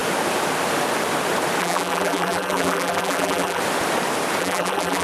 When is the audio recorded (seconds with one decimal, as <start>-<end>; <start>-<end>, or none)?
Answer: 0.0-1.6; 3.6-4.4

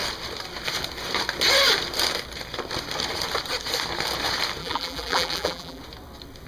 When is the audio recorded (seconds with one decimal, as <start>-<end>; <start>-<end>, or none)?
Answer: 0.0-4.6; 5.8-6.5

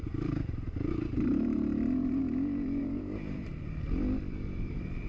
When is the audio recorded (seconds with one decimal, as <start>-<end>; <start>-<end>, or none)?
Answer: 2.2-2.8; 3.5-4.3

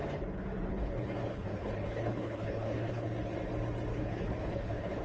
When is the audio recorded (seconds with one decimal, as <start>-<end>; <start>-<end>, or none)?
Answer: 0.0-0.7; 3.1-3.9